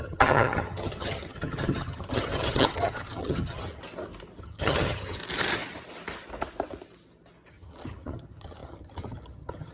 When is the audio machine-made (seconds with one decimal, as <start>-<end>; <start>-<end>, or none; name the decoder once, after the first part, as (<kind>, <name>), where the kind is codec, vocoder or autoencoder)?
0.0-3.8 (vocoder, HiFi-GAN); 4.4-5.2; 7.5-9.7